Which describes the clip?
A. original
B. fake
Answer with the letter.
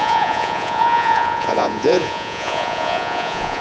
B